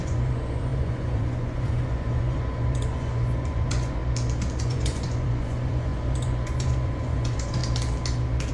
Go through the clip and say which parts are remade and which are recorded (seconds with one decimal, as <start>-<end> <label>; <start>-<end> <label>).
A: 0.0-4.0 remade; 4.0-4.6 recorded; 4.6-7.6 remade; 7.6-8.5 recorded